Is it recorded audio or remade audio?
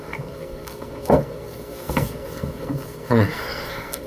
remade